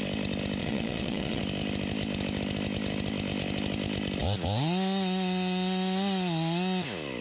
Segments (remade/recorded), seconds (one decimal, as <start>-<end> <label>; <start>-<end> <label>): 0.0-0.6 recorded; 0.6-1.4 remade; 1.4-7.2 recorded